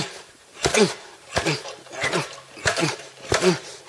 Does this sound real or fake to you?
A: fake